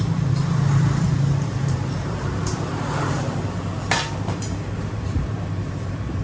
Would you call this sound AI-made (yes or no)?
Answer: yes